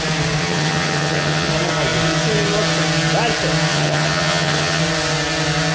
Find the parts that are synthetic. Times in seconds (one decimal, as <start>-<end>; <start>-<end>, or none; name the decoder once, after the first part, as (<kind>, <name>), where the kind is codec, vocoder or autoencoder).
0.4-1.5 (vocoder, HiFi-GAN); 3.7-4.8